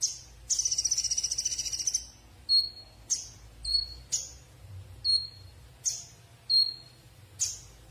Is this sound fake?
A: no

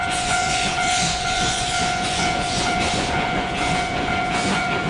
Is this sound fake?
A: yes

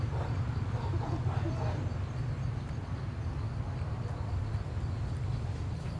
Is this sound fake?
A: no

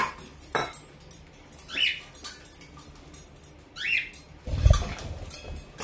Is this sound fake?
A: no